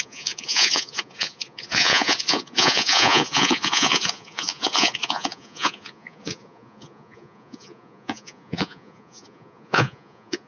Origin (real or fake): fake